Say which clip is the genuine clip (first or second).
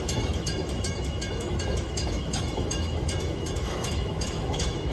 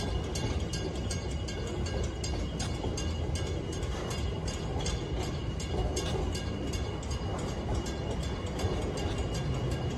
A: second